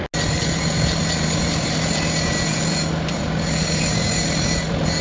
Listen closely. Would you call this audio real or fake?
real